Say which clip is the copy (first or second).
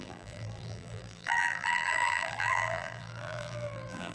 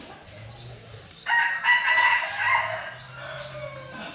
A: first